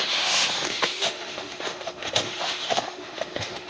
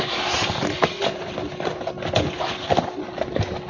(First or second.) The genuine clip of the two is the second